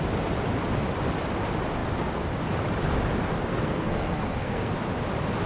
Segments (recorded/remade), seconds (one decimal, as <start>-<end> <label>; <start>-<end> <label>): 0.0-3.5 recorded; 3.5-4.7 remade; 4.7-5.5 recorded